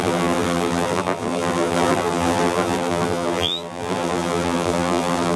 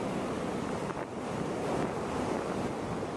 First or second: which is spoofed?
first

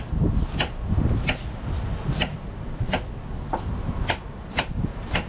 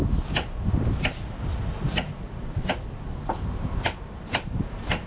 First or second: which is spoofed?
second